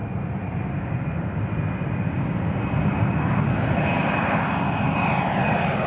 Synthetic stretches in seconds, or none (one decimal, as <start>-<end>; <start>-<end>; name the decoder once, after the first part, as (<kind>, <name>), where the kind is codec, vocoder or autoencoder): none